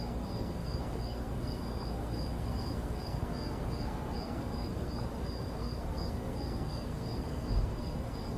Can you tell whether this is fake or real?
fake